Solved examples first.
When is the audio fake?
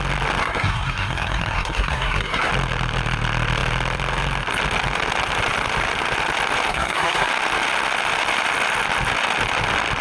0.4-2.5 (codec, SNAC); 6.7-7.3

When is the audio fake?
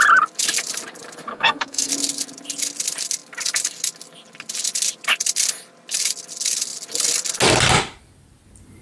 1.3-1.9 (codec, SNAC)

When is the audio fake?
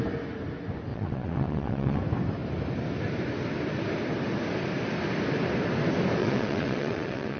0.9-2.0 (vocoder, WaveNeXt); 6.2-7.4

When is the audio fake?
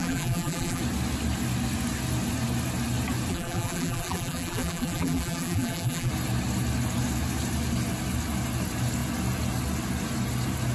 0.0-0.8 (vocoder, BigVGAN v2); 3.3-6.1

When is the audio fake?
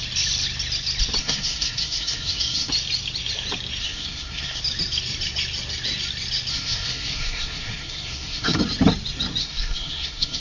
1.2-2.7 (codec, SNAC); 3.8-4.6; 6.5-8.6; 9.4-10.4